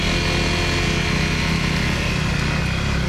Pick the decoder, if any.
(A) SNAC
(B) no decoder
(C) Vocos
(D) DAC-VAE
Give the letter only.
B